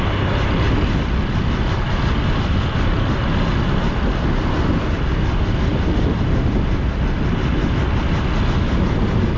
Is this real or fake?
real